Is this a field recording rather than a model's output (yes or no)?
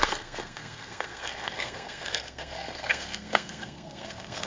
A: no